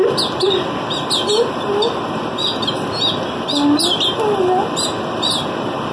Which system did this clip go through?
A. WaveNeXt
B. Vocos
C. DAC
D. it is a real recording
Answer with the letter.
D